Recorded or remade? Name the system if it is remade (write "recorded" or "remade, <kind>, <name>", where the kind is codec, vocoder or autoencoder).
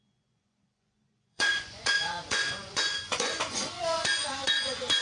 remade, vocoder, Vocos